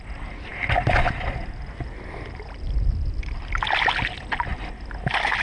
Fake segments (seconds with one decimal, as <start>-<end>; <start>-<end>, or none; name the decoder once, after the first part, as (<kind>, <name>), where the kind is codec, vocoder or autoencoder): none